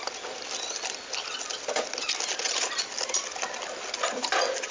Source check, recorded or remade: recorded